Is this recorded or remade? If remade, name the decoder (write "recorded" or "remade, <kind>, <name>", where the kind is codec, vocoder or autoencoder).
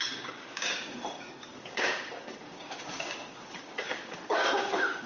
remade, codec, DAC